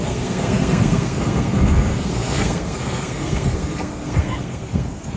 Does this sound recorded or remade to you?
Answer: remade